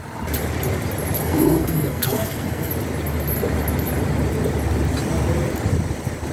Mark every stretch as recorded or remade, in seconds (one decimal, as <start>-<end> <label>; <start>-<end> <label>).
0.0-1.2 recorded; 1.2-2.7 remade; 2.7-6.3 recorded